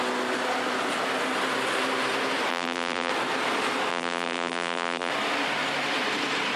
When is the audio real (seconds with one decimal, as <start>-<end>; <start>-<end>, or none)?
0.0-2.5; 3.1-3.9; 5.1-6.6